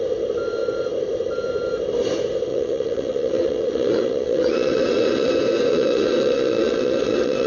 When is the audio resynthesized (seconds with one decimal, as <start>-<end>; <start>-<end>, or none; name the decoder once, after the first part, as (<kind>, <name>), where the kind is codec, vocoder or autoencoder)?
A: 2.5-5.3 (vocoder, WaveNeXt); 5.7-7.5